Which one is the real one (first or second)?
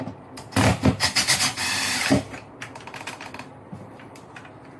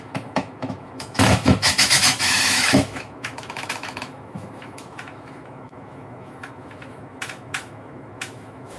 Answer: first